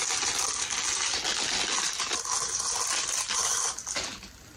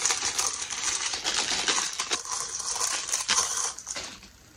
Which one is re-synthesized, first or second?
second